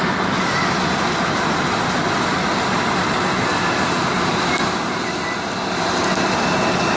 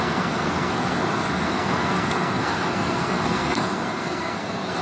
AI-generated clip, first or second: second